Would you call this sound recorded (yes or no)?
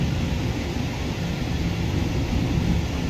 yes